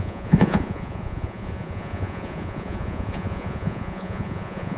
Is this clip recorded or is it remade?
remade